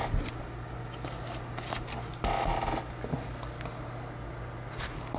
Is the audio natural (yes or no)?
yes